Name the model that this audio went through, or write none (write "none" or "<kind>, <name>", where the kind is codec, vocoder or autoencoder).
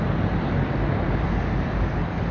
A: none